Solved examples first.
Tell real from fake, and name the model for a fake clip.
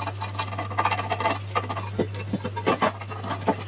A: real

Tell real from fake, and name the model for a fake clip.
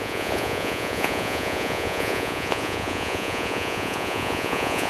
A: fake, vocoder, Vocos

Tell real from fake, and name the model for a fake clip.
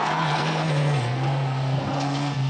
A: fake, codec, SNAC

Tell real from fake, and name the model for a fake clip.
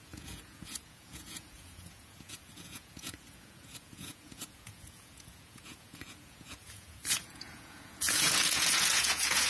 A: fake, vocoder, Vocos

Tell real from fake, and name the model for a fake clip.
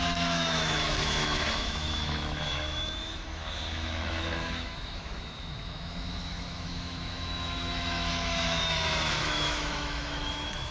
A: fake, autoencoder, DAC-VAE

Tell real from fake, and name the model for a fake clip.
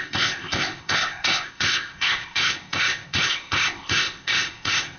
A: fake, codec, ZipCodec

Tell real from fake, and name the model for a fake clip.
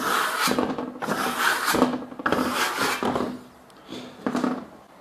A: real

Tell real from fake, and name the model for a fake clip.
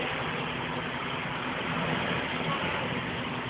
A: real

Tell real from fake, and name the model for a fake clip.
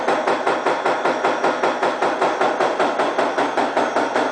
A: real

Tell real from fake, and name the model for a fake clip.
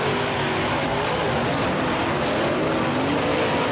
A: real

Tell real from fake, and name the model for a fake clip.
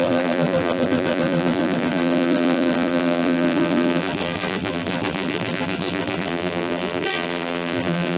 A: fake, vocoder, BigVGAN v2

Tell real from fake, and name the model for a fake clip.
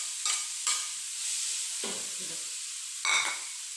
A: real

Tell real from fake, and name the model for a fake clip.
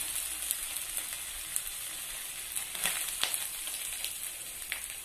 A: real